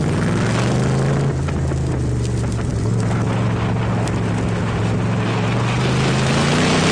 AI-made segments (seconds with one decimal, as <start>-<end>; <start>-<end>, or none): none